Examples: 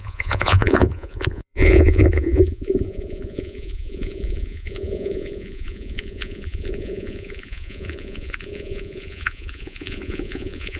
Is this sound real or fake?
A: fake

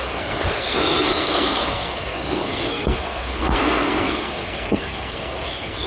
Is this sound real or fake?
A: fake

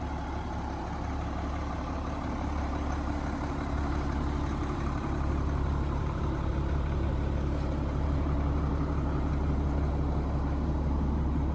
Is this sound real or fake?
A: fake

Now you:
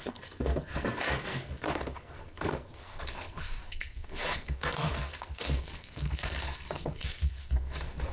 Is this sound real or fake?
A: fake